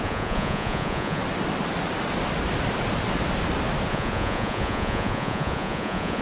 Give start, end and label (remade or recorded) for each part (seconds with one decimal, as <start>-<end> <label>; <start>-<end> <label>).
0.0-1.2 remade; 1.2-3.9 recorded; 3.9-6.2 remade